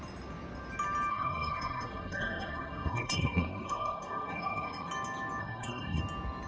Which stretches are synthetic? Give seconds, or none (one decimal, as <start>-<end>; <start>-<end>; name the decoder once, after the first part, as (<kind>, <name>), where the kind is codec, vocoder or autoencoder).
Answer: 1.1-4.9 (codec, SNAC); 5.4-6.0